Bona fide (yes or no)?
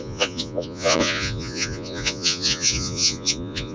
no